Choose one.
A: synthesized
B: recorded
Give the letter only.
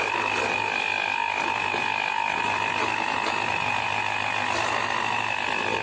B